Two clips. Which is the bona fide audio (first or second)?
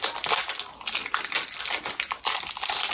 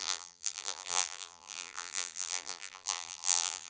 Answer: first